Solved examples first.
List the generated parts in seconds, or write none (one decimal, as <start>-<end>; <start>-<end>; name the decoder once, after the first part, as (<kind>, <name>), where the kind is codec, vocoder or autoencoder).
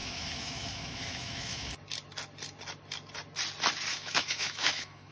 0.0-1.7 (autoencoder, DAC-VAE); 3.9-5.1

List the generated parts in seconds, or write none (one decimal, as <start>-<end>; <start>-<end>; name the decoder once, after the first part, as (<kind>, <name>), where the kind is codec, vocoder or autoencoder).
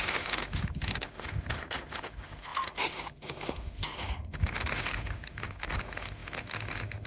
0.0-7.1 (autoencoder, DAC-VAE)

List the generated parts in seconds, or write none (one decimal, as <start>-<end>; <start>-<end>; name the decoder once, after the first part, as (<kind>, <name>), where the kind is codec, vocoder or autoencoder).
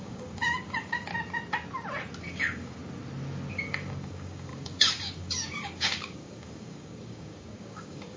0.0-1.1 (codec, DAC); 2.2-2.8; 3.5-8.2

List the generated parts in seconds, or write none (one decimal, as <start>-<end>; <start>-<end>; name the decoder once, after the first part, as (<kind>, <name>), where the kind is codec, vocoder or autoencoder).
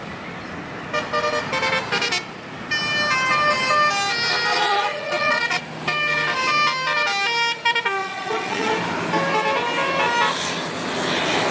4.5-5.6 (vocoder, Vocos); 8.0-8.7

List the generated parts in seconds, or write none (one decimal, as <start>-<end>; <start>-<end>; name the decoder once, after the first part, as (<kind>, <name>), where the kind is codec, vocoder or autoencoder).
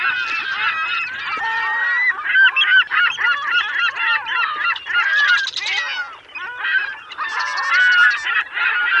none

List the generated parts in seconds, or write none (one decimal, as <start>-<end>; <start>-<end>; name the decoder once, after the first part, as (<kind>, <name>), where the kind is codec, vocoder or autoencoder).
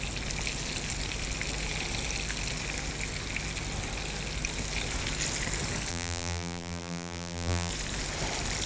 5.9-7.7 (vocoder, BigVGAN v2)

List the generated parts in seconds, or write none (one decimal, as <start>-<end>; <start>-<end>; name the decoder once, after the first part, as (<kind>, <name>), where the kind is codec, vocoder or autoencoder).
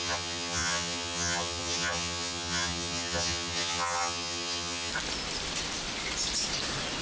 0.0-4.9 (vocoder, HiFi-GAN)